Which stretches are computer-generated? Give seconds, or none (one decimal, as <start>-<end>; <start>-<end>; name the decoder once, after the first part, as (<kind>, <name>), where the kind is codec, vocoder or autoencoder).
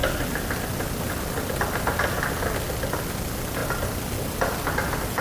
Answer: 3.6-4.4 (vocoder, BigVGAN v2)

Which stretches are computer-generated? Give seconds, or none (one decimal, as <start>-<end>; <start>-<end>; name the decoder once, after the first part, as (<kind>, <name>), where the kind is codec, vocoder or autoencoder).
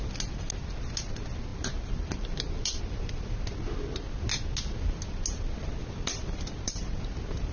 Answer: 1.5-2.8 (vocoder, BigVGAN v2); 5.8-6.7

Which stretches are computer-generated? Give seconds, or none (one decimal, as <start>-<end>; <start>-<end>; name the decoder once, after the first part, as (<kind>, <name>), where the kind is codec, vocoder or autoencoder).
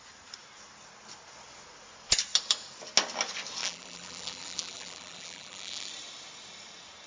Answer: 3.6-5.9 (vocoder, BigVGAN v2)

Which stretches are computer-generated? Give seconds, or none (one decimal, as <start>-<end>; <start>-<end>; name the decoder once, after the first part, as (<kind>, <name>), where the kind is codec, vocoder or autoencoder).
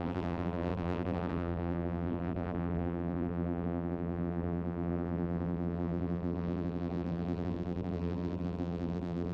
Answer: 0.0-9.3 (vocoder, BigVGAN v2)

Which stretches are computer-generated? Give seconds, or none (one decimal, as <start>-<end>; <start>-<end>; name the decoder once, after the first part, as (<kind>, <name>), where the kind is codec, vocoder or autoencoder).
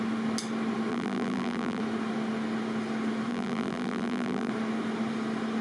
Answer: 0.9-1.8 (vocoder, BigVGAN v2); 3.3-4.5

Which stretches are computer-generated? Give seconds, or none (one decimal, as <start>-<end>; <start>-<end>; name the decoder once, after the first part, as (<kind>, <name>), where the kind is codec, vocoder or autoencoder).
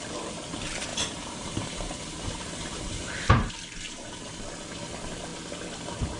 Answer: 0.9-3.5 (vocoder, BigVGAN v2)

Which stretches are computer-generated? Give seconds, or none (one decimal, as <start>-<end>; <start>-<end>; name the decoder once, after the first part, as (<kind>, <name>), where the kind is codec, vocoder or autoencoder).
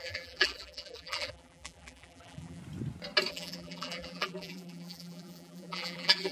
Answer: 0.0-2.6 (vocoder, BigVGAN v2); 3.3-6.3